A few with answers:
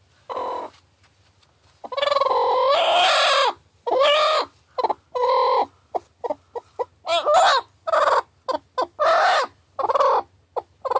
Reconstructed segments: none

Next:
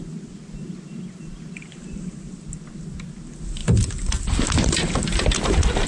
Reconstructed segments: none

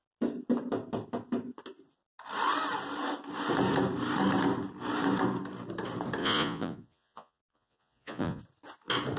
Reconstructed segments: 6.2-8.4

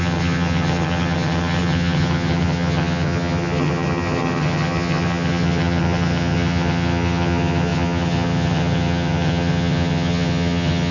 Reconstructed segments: 0.0-10.9

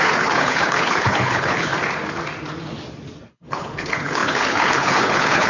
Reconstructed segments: 0.0-1.7; 3.3-5.5

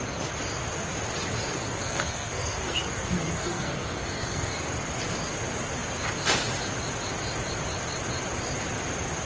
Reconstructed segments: 1.5-4.5

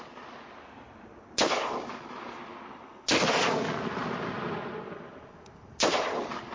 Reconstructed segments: none